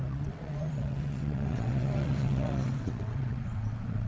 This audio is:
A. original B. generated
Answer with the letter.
B